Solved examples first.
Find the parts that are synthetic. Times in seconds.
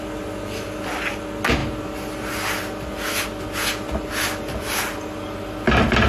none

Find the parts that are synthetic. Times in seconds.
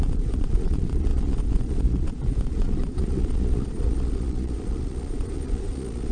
0.0-6.1 (vocoder, Vocos)